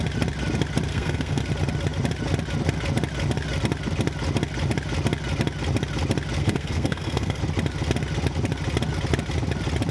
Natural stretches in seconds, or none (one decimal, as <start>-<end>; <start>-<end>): 0.0-0.9; 1.4-6.4; 7.4-9.9